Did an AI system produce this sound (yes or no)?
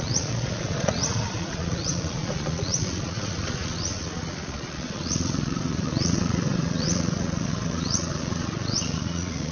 yes